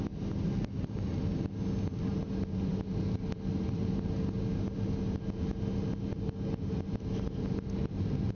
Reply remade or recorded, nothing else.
recorded